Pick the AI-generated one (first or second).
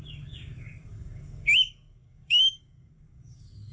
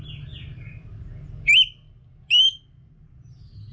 first